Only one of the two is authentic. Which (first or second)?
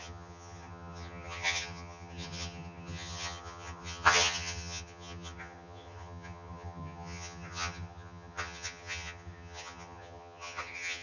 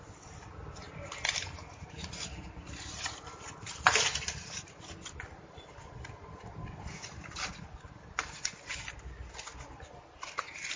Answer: second